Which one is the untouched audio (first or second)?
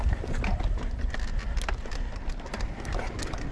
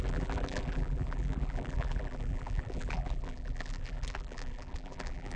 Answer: first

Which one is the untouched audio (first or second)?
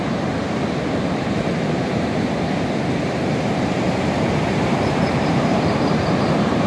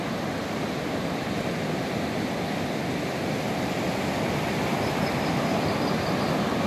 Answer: second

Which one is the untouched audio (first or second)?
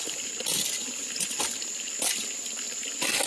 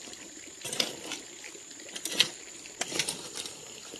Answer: first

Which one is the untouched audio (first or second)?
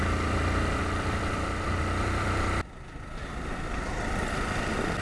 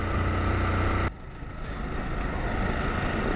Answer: second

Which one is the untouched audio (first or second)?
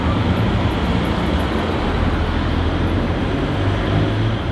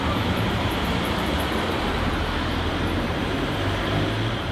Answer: first